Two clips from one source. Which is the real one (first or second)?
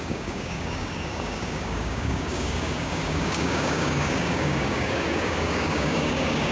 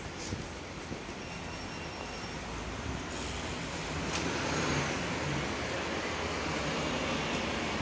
second